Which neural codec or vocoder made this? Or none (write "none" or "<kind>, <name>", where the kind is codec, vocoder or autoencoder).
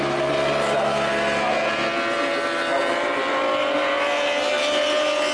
none